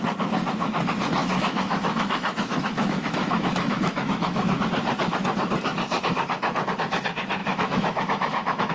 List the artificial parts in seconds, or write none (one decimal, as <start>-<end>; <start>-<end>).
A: 1.2-4.6; 7.4-8.7

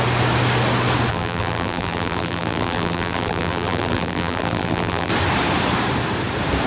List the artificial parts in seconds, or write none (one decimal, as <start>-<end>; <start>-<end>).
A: 1.1-5.1

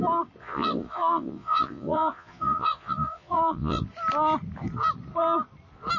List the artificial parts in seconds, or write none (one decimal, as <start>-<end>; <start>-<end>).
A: 0.4-3.8

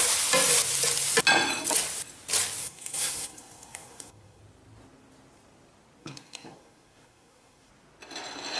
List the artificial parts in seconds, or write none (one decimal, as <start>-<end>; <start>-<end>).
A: 2.6-4.4; 6.0-7.7